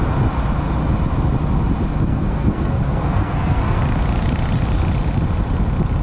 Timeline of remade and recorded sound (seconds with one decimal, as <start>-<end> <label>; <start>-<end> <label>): 0.0-2.1 recorded; 2.1-3.8 remade; 3.8-6.0 recorded